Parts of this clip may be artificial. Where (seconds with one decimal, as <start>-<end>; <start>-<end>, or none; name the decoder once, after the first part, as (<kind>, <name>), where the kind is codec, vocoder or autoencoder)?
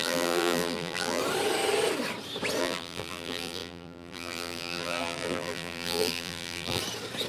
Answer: 0.0-1.2 (vocoder, BigVGAN v2); 2.6-6.8